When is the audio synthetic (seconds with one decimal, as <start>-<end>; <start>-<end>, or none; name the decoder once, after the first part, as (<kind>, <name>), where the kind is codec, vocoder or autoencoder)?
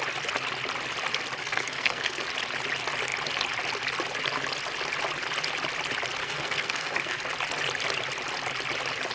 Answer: 1.4-2.2 (codec, SNAC); 6.2-7.2